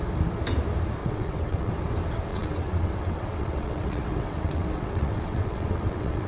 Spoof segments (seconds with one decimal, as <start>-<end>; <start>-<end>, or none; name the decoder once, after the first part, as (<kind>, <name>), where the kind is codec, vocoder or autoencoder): 1.0-1.7 (vocoder, WaveNeXt); 2.3-6.3